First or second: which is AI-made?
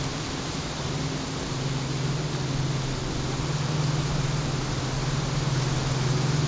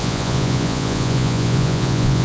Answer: second